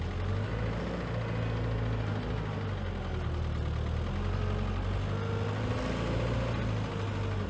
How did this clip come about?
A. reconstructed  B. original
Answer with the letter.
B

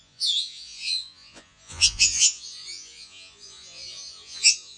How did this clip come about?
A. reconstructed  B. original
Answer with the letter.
A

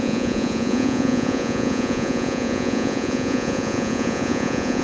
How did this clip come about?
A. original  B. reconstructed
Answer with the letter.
B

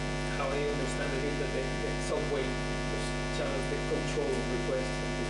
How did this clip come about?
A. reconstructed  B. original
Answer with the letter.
B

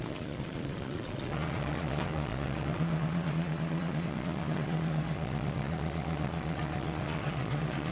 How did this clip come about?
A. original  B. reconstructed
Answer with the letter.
B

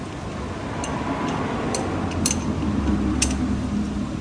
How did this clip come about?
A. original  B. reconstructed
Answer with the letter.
A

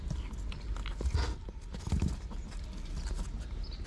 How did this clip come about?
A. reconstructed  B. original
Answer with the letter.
B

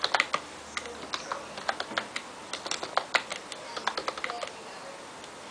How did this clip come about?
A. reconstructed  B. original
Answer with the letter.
B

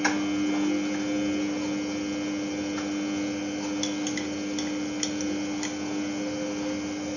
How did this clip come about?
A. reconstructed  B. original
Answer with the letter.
B